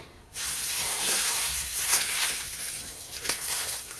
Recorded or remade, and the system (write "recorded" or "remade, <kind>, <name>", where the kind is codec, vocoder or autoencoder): remade, codec, SNAC